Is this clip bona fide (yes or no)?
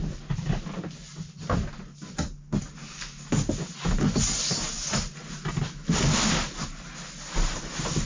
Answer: yes